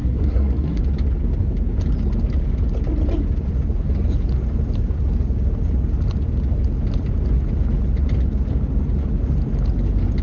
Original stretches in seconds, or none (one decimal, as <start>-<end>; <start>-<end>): 0.8-10.2